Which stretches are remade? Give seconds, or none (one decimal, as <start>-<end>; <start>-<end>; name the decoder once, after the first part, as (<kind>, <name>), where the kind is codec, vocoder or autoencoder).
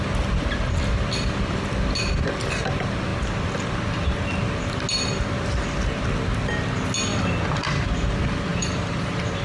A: 8.5-9.4 (vocoder, BigVGAN v2)